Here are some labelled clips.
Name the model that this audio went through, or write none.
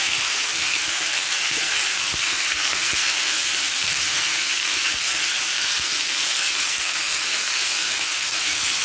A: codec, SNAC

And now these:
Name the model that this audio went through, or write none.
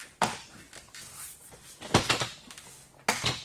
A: none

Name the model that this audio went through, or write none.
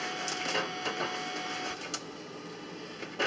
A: none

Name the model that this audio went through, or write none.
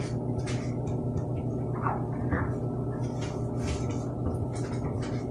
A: none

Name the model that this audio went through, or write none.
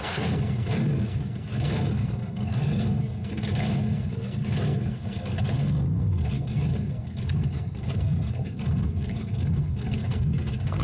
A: codec, SNAC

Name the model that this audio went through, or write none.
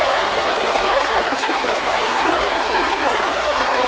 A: codec, SNAC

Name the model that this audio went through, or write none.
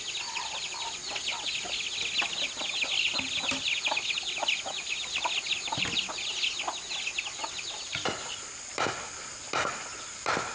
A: none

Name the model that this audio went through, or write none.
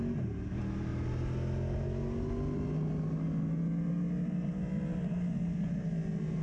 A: none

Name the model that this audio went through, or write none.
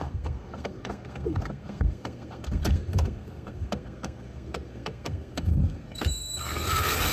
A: codec, SNAC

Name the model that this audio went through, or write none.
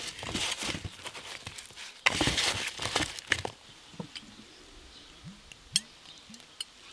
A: none